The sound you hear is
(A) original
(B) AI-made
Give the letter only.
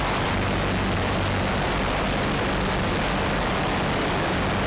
A